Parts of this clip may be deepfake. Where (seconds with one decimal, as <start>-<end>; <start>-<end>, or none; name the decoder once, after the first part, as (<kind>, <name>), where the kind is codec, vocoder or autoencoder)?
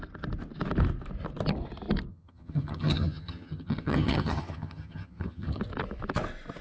2.1-5.6 (vocoder, HiFi-GAN)